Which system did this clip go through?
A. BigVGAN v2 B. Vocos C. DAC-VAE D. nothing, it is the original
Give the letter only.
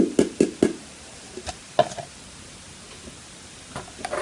D